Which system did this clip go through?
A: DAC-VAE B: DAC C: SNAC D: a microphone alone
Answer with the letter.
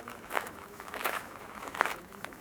A